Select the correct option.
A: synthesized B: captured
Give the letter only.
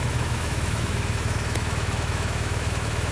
A